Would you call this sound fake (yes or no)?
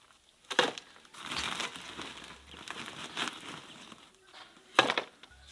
no